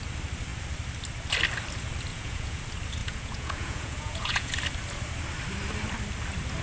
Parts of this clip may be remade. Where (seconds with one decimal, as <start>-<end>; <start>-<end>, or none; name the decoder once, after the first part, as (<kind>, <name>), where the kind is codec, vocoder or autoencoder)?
2.1-2.6 (vocoder, Vocos); 3.0-4.5